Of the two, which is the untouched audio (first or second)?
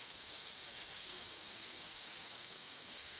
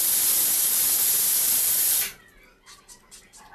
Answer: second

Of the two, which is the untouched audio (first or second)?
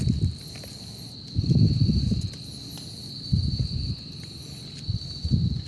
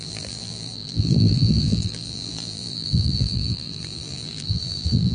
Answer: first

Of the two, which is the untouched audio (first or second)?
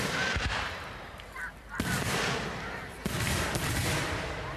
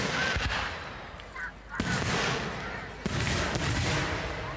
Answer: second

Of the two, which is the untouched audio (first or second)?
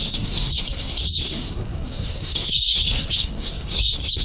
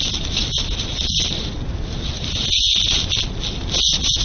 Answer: second